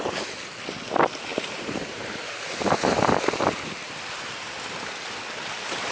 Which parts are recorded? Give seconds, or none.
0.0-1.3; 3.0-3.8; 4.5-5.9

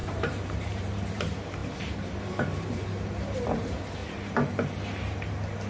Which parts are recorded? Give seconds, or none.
4.0-5.7

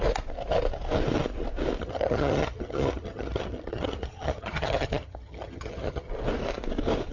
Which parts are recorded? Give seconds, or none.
0.0-1.8; 6.1-7.1

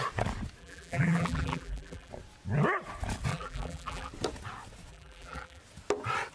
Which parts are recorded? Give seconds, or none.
0.0-0.6; 2.1-3.3; 4.1-4.9; 5.6-6.3

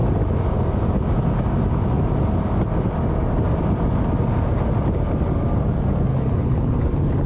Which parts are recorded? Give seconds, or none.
0.0-6.1; 6.7-7.3

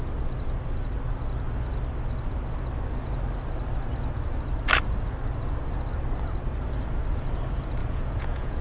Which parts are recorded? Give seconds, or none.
0.0-7.8